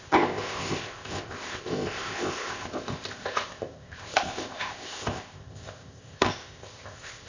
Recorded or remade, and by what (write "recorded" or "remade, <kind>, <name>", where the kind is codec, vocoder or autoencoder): remade, codec, ZipCodec